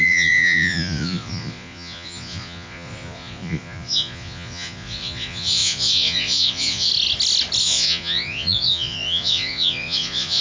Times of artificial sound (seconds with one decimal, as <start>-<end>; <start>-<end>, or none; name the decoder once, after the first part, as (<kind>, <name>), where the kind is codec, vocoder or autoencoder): 0.0-6.9 (vocoder, Vocos); 7.6-10.4